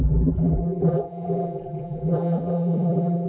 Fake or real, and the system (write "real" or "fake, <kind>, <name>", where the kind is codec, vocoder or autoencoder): fake, vocoder, BigVGAN v2